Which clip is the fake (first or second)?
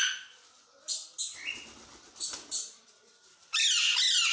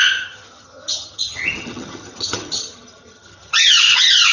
second